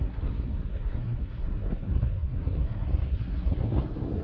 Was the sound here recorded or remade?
remade